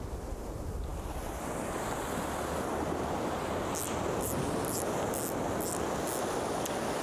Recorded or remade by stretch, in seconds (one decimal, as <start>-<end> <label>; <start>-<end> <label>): 0.0-7.0 recorded